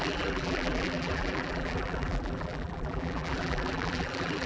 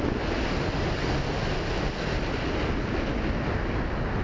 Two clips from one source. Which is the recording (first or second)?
second